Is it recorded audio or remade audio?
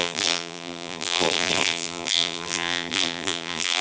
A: remade